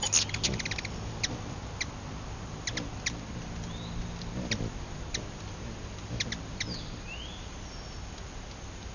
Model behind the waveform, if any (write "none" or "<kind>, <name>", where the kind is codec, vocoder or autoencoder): none